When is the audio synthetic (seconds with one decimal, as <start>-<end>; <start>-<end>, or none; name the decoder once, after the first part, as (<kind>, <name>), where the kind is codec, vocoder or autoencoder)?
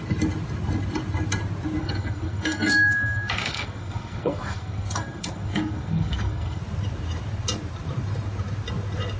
1.8-6.6 (codec, SNAC)